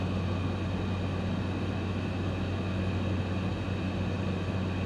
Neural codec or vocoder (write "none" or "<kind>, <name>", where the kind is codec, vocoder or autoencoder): none